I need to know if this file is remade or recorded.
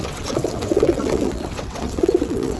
remade